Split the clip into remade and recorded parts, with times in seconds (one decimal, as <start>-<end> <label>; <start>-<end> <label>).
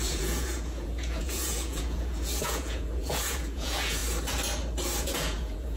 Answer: 0.0-4.0 remade; 4.0-5.0 recorded; 5.0-5.8 remade